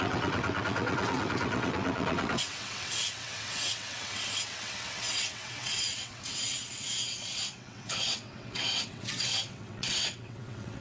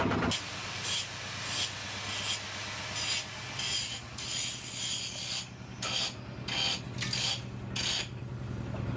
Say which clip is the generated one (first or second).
first